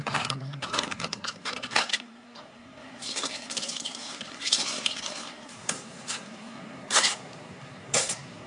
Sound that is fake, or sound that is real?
fake